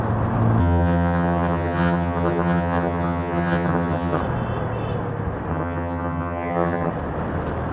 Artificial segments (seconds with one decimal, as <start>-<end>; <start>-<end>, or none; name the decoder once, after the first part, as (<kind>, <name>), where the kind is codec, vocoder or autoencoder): 0.6-4.2 (vocoder, HiFi-GAN); 5.5-6.9